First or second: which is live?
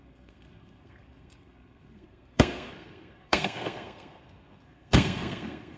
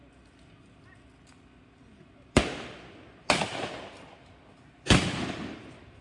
second